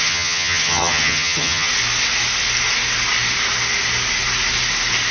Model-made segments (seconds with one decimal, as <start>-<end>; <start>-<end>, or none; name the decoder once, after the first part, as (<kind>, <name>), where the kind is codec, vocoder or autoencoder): 0.0-1.7 (vocoder, HiFi-GAN)